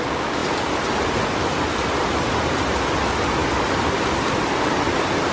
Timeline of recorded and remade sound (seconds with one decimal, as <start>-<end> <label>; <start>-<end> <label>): 0.0-5.3 recorded